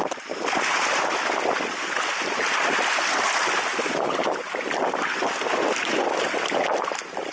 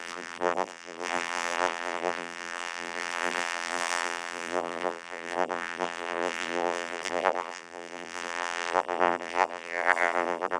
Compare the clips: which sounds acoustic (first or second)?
first